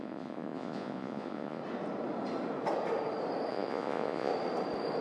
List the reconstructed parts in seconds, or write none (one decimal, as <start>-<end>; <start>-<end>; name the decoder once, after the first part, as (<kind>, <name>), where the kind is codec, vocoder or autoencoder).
0.0-1.6 (vocoder, Vocos); 3.5-4.3